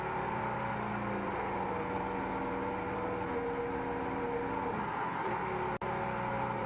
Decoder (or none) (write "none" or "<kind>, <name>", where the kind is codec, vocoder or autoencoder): none